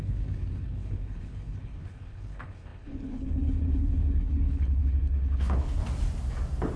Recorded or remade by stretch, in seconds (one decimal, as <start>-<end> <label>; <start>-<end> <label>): 0.0-5.8 remade; 5.8-6.8 recorded